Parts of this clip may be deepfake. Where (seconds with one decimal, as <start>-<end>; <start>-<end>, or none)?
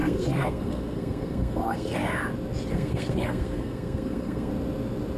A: 0.0-2.0; 2.7-4.5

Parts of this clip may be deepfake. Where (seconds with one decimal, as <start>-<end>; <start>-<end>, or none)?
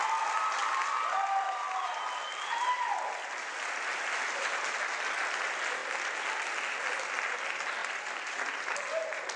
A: 0.6-2.5; 7.8-9.4